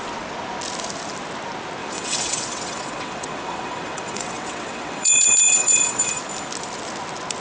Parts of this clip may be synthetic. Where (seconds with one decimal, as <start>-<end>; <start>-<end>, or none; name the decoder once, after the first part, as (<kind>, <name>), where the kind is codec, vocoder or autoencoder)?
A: 1.8-6.2 (vocoder, WaveNeXt)